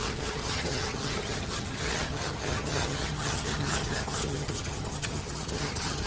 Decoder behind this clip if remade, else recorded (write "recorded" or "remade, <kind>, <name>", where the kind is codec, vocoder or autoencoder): remade, vocoder, HiFi-GAN